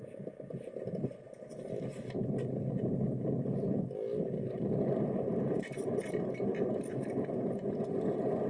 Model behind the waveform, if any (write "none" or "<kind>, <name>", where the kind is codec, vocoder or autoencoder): none